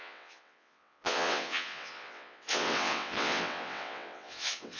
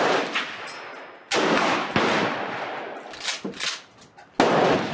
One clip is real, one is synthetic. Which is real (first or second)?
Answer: second